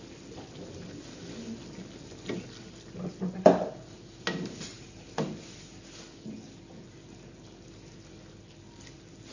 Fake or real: real